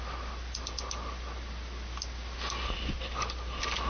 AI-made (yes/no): no